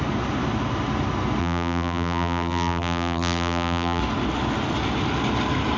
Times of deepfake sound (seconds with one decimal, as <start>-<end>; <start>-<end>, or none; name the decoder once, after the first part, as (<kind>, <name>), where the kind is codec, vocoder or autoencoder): 1.4-4.0 (vocoder, BigVGAN v2)